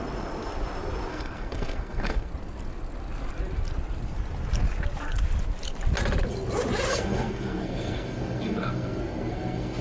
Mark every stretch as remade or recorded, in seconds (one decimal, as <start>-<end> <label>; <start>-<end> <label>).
0.0-1.1 recorded; 1.1-2.3 remade; 2.3-6.9 recorded; 6.9-9.8 remade